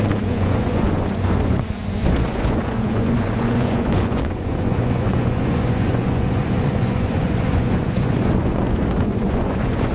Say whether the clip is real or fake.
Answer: fake